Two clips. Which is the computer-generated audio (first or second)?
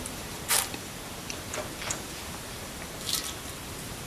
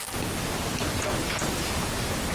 first